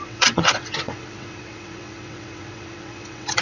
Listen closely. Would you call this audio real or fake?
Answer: fake